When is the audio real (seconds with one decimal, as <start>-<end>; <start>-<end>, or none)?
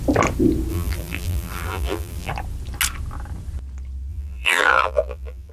0.0-0.7; 2.3-4.1